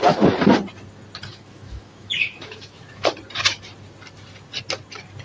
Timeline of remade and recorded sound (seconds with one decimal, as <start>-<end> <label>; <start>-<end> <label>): 0.0-1.3 recorded; 1.3-3.1 remade; 3.1-5.2 recorded